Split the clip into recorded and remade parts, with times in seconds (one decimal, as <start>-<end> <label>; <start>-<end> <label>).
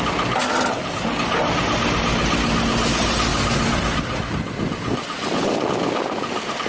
0.0-6.7 recorded